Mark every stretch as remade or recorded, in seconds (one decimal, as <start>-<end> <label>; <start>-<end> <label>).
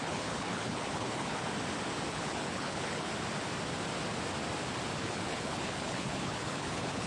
0.0-1.4 remade; 1.4-2.1 recorded; 2.1-3.1 remade; 3.1-5.0 recorded; 5.0-7.1 remade